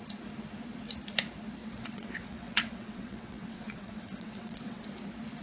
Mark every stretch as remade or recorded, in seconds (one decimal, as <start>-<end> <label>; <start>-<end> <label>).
0.0-1.6 recorded; 1.6-4.8 remade; 4.8-5.4 recorded